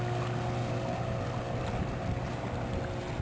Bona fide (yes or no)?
yes